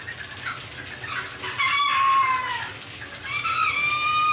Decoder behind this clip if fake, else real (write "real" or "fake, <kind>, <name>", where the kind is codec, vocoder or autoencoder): real